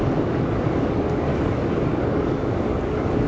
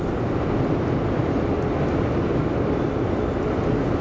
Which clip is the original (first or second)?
second